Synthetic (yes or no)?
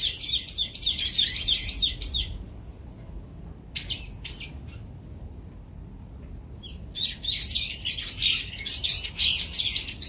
no